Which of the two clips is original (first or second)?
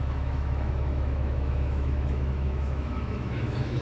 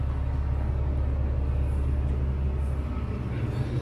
second